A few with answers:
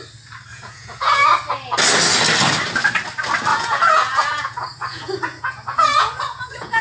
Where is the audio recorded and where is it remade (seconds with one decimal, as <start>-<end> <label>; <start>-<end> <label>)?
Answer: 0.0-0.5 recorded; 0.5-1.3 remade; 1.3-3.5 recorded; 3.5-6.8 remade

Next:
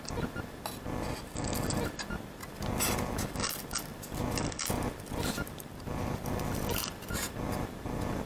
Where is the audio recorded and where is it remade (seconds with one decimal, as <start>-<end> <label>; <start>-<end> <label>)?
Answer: 0.0-8.3 recorded

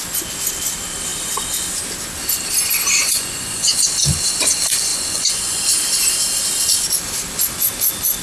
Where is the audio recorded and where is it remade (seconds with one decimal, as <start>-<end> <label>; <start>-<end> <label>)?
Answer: 0.0-3.0 recorded; 3.0-3.7 remade; 3.7-4.9 recorded; 4.9-5.6 remade; 5.6-8.2 recorded

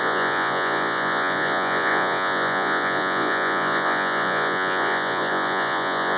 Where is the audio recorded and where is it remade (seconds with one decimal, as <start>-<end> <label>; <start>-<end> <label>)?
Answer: 0.0-6.2 remade

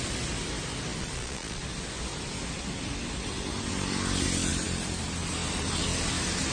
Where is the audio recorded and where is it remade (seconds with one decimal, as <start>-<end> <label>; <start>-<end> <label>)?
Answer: 0.0-1.0 recorded; 1.0-1.6 remade; 1.6-6.5 recorded

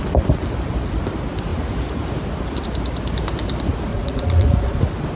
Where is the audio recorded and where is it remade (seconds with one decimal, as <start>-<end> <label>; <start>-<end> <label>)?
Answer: 0.0-3.9 recorded; 3.9-4.8 remade; 4.8-5.2 recorded

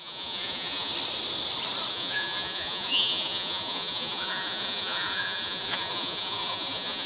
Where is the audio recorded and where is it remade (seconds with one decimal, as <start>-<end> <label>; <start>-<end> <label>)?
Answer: 0.0-0.9 remade; 0.9-1.9 recorded; 1.9-7.1 remade

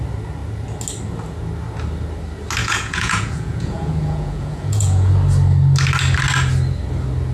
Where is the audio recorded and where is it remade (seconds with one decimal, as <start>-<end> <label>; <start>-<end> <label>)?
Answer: 0.0-2.6 recorded; 2.6-5.1 remade; 5.1-7.3 recorded